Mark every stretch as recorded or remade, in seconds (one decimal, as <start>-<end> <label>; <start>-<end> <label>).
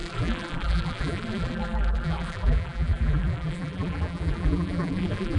0.0-5.4 remade